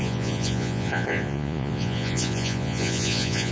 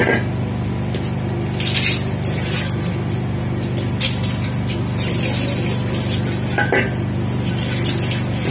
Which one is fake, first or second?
first